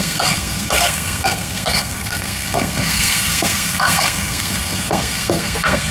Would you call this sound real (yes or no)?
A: no